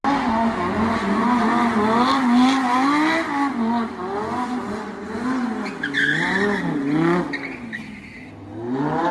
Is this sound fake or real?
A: real